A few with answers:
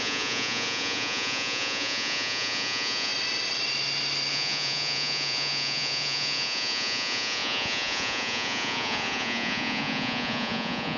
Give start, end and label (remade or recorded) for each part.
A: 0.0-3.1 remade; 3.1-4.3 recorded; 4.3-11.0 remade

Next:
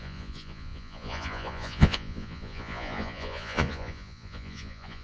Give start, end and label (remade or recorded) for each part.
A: 0.0-5.0 remade

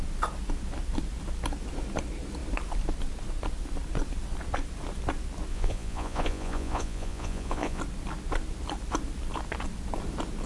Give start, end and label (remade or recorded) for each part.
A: 0.0-5.5 recorded; 5.5-7.8 remade; 7.8-10.5 recorded